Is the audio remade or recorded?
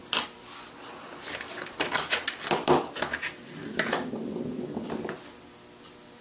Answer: recorded